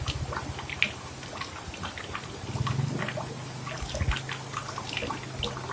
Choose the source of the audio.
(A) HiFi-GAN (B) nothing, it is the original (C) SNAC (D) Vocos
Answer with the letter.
B